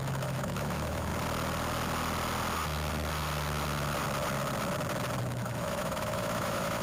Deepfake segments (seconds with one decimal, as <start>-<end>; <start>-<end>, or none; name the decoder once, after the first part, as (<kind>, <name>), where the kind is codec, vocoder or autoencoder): 0.0-1.1 (autoencoder, DAC-VAE); 5.2-6.8